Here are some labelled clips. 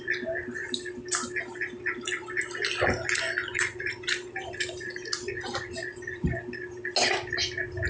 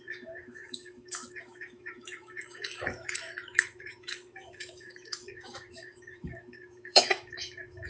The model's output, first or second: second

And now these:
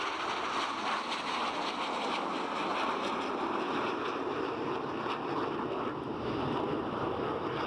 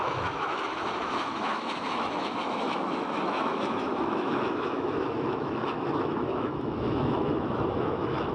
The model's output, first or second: second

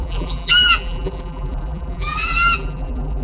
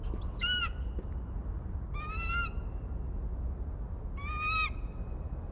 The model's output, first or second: first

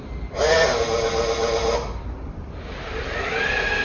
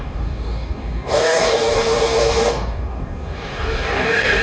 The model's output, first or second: second